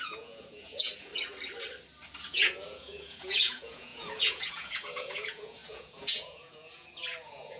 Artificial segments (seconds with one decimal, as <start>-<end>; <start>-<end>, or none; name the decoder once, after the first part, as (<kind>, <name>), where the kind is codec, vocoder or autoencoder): 0.0-1.1 (vocoder, Vocos); 2.2-7.6